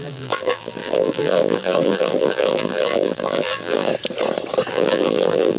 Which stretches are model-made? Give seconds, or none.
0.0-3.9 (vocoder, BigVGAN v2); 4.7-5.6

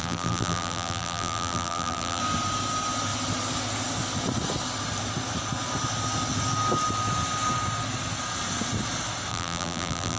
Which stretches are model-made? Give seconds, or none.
0.0-2.2 (vocoder, BigVGAN v2); 9.3-10.2

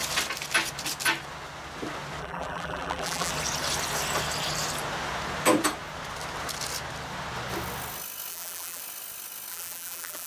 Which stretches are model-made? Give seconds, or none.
2.2-3.3 (vocoder, BigVGAN v2); 8.3-8.8; 9.5-10.3

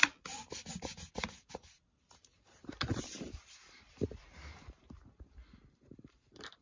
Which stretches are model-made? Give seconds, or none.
0.7-6.6 (vocoder, BigVGAN v2)